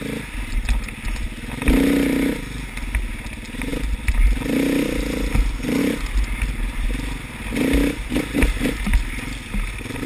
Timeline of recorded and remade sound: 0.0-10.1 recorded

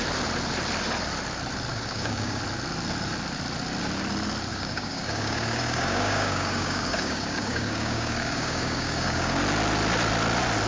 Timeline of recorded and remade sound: 0.0-1.7 recorded; 1.7-2.4 remade; 2.4-4.5 recorded; 4.5-9.4 remade; 9.4-10.7 recorded

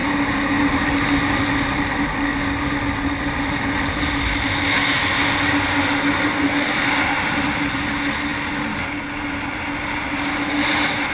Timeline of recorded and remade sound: 0.0-11.1 recorded

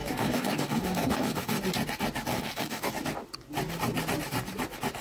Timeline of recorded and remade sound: 0.0-1.6 remade; 1.6-2.3 recorded; 2.3-2.9 remade; 2.9-5.0 recorded

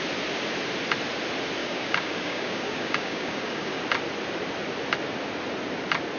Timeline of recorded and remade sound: 0.0-1.6 recorded; 1.6-3.8 remade; 3.8-6.2 recorded

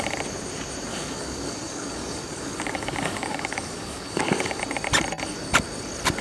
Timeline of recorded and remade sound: 0.0-0.9 recorded; 0.9-4.6 remade; 4.6-6.2 recorded